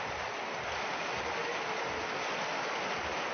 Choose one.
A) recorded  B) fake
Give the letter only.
A